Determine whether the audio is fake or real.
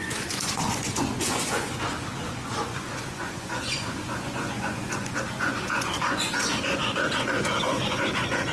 fake